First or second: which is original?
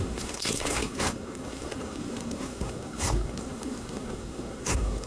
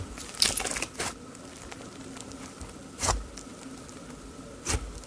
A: second